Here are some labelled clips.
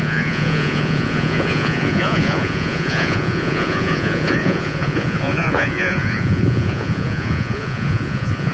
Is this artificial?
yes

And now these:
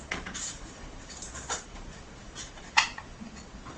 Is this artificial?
yes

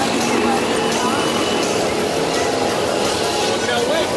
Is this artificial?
no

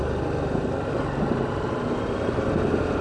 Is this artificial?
no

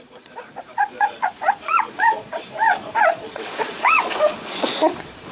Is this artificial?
yes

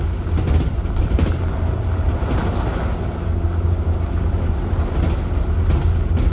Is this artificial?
no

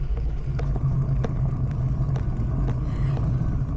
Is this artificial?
no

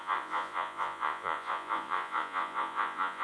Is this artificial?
yes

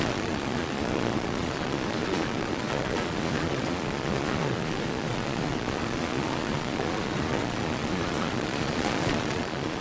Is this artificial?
yes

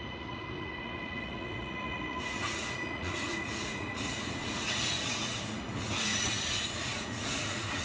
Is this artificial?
yes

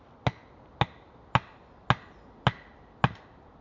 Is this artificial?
no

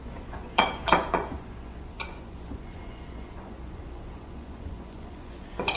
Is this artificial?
yes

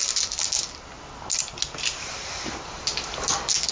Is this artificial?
no